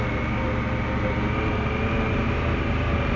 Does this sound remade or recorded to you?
recorded